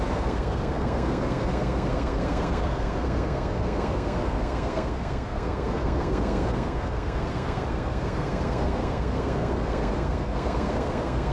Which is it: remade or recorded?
remade